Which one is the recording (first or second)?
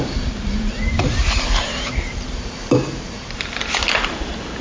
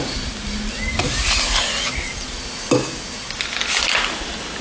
second